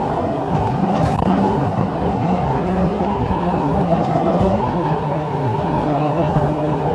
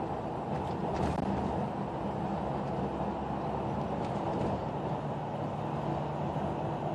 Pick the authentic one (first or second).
second